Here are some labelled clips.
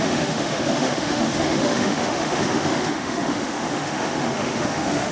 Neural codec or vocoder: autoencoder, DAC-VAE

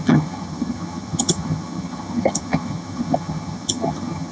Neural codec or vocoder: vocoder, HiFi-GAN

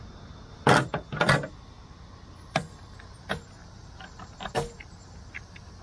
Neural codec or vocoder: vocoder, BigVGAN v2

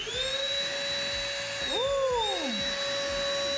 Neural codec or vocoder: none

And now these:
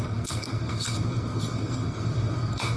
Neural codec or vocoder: codec, SNAC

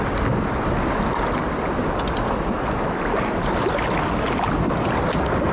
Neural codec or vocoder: none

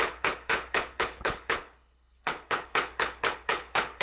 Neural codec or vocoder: codec, HILCodec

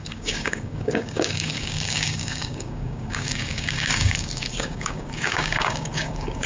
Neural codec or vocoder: codec, DAC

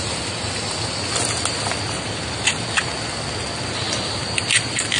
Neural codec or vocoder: none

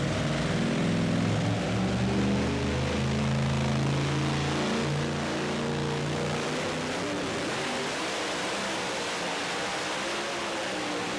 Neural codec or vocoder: none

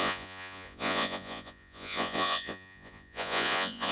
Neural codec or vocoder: vocoder, Vocos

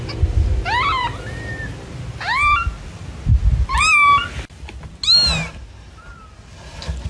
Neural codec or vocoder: none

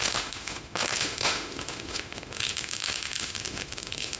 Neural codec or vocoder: autoencoder, DAC-VAE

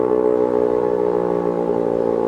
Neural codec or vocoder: none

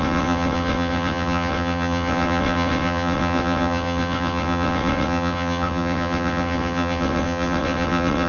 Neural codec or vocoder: vocoder, WaveNeXt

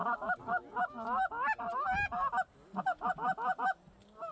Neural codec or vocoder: none